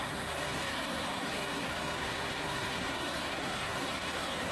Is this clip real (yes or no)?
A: no